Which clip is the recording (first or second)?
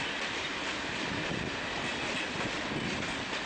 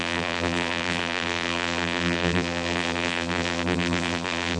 first